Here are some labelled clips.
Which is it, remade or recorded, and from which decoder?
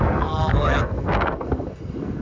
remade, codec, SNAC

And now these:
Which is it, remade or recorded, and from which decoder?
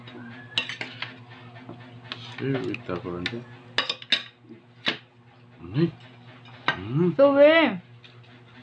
recorded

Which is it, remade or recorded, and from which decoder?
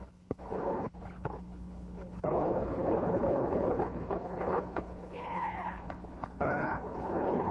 remade, codec, HILCodec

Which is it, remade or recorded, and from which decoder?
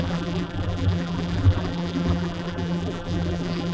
remade, vocoder, BigVGAN v2